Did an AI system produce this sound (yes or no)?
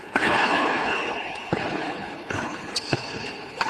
yes